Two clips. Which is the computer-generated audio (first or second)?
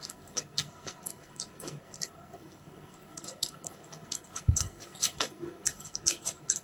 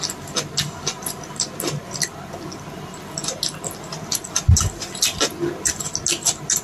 first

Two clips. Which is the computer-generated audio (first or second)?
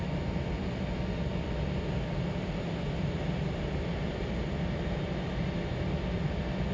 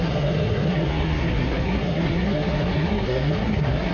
second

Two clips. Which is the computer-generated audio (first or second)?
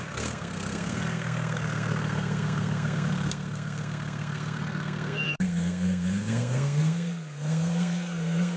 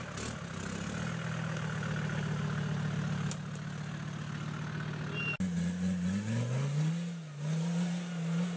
first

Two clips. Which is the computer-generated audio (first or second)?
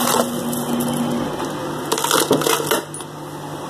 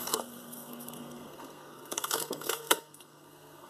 second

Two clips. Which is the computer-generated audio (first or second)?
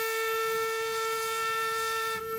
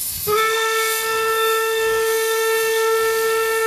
second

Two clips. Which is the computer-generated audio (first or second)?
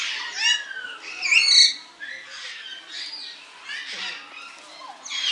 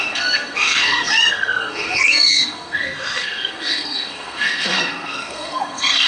second